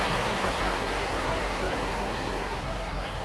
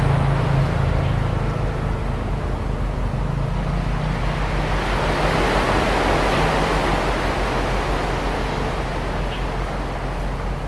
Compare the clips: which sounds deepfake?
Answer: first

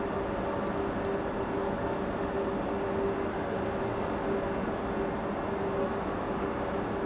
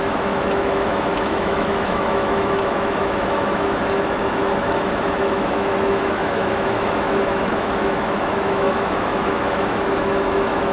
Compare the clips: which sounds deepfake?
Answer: second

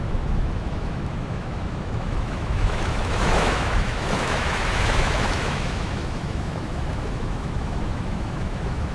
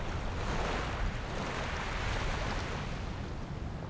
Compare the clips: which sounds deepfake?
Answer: first